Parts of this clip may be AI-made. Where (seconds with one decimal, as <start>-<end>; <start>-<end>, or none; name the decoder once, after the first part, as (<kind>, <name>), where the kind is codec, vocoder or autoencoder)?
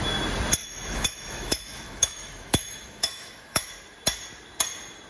0.6-3.7 (autoencoder, DAC-VAE)